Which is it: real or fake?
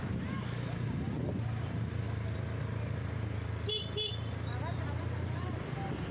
real